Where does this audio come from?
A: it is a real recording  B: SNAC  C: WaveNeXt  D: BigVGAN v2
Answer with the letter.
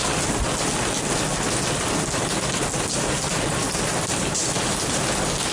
A